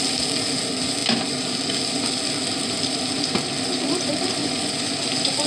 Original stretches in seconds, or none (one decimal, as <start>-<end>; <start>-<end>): 0.0-4.4; 4.9-5.5